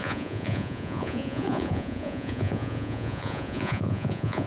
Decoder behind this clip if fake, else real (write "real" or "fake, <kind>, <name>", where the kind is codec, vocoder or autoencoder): fake, vocoder, Vocos